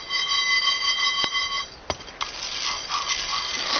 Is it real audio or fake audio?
real